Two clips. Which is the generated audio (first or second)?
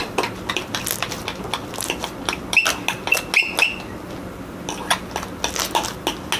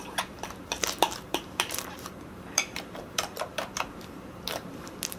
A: second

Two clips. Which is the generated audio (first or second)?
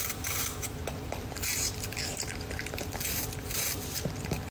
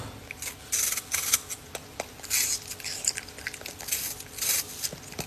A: first